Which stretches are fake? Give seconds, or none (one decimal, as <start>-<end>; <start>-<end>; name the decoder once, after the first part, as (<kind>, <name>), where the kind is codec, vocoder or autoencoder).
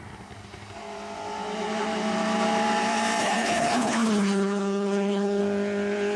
3.2-5.4 (codec, HILCodec)